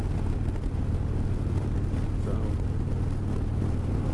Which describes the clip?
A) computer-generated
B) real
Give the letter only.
B